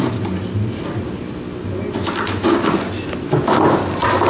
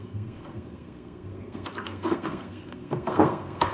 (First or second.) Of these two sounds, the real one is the first